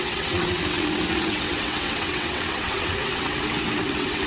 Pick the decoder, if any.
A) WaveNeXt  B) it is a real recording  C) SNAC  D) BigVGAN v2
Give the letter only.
A